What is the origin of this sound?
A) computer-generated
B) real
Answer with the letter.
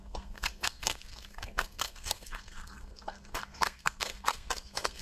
A